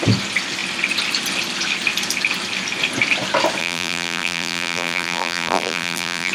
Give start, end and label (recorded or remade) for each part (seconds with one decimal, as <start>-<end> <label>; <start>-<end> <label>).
0.0-3.6 recorded; 3.6-6.3 remade